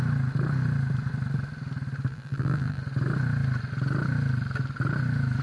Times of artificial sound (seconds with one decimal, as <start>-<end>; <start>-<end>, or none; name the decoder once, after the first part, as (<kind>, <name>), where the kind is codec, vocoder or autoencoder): 2.1-2.8 (vocoder, BigVGAN v2)